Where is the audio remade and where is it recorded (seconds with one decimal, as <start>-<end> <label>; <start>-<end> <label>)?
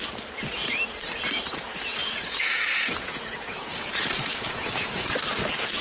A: 0.0-2.0 recorded; 2.0-5.1 remade; 5.1-5.8 recorded